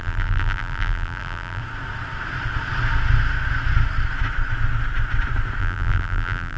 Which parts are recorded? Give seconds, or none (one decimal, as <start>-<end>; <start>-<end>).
1.6-5.6